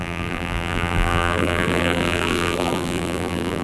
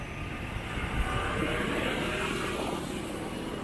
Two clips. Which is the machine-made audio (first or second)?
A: first